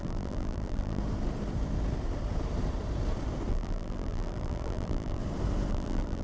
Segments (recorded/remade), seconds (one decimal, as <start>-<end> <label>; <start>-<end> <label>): 0.0-1.0 remade; 1.0-3.5 recorded; 3.5-5.2 remade; 5.2-5.7 recorded; 5.7-6.2 remade